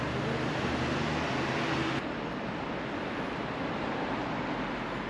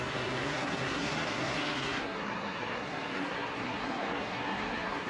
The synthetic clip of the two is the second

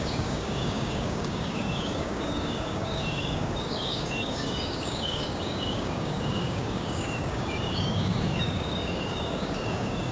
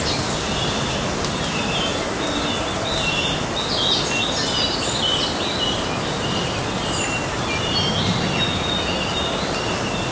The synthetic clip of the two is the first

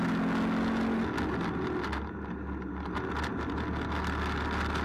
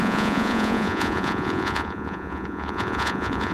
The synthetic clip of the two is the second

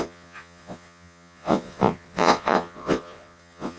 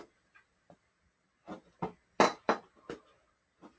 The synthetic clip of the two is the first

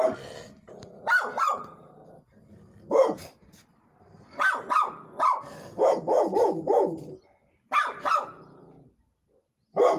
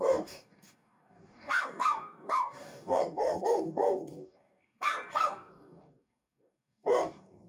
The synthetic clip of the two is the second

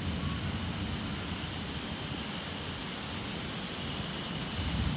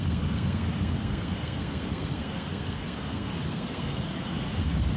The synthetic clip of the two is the second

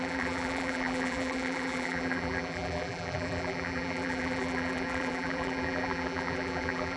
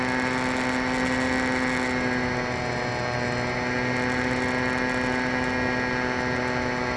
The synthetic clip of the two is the first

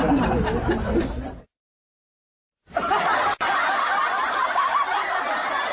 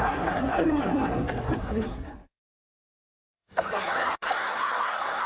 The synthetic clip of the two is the second